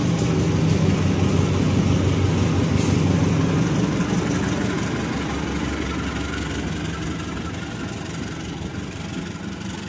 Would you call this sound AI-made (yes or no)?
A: no